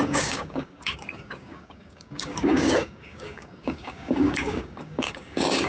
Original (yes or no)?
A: no